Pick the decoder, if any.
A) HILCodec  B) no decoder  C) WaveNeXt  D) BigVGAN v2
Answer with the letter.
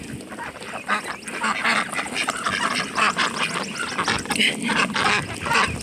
B